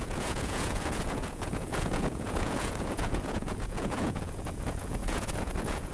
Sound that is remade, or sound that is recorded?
remade